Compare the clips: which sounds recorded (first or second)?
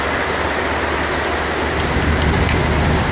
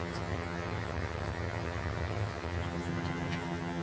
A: first